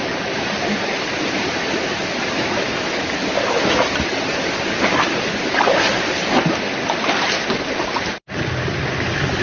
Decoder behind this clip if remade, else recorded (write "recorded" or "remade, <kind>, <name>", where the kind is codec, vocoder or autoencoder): recorded